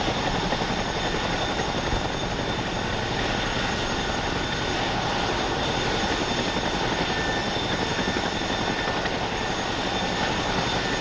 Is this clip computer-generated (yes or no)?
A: no